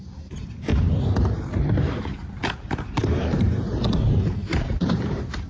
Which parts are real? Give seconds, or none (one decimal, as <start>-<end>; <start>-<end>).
0.7-2.0; 3.7-4.5